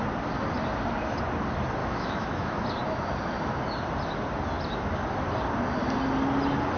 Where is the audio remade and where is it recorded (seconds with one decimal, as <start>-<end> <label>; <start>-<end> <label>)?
0.0-1.8 recorded; 1.8-2.6 remade; 2.6-6.8 recorded